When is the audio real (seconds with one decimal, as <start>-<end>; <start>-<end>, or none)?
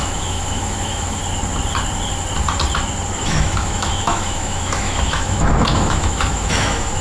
1.2-3.2